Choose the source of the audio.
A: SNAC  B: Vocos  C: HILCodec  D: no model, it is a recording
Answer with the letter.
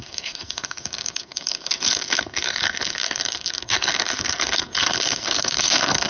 A